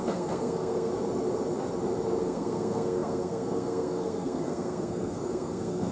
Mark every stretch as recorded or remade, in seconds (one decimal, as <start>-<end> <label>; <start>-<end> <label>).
0.0-0.9 remade; 0.9-2.2 recorded; 2.2-5.9 remade